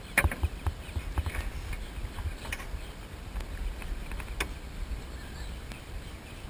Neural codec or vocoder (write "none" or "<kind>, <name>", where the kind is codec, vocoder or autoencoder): none